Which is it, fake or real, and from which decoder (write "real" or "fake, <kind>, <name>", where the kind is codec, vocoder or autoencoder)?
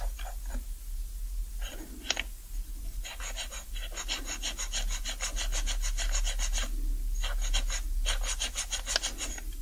real